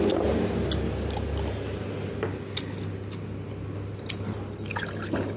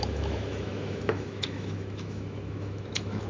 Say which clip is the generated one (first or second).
second